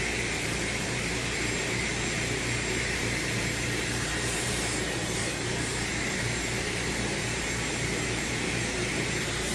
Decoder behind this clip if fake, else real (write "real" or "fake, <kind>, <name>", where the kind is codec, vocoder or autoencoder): fake, vocoder, BigVGAN v2